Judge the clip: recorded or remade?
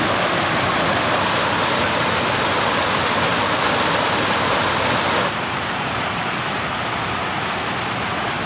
recorded